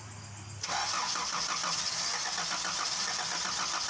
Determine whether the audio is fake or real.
real